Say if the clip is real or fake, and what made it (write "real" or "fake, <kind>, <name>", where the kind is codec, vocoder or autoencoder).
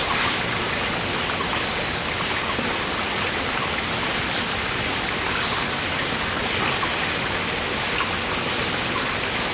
real